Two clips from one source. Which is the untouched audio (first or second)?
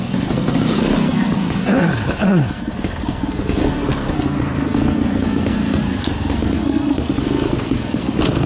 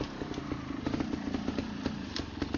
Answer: second